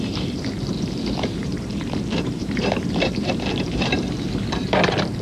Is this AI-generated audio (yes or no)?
yes